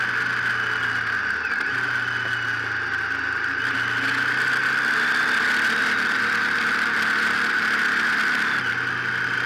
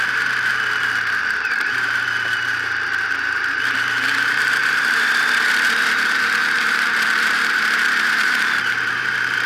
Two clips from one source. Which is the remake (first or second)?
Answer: second